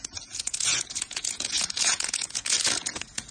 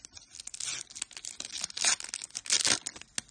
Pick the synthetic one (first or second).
first